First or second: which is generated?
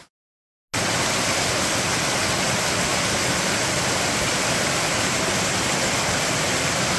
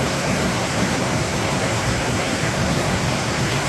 second